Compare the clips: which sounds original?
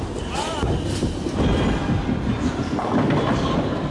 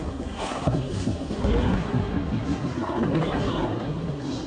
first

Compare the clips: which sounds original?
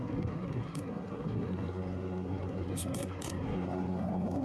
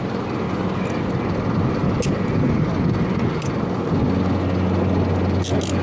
second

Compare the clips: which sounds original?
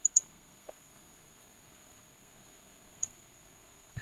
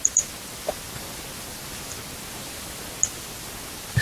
second